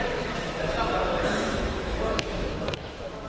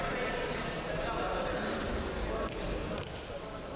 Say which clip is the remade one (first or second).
first